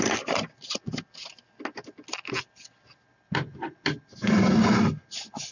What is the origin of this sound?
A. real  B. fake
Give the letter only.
A